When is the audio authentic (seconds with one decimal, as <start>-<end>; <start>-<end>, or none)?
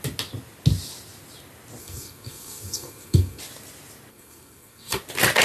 0.0-1.8; 3.4-4.1; 5.0-5.4